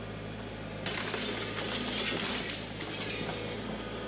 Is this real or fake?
real